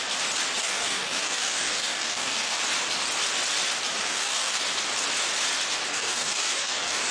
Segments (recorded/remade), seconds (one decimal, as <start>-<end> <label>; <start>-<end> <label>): 0.0-0.6 recorded; 0.6-2.6 remade; 2.6-4.0 recorded; 4.0-4.6 remade; 4.6-5.9 recorded; 5.9-7.1 remade